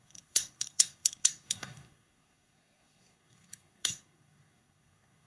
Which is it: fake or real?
fake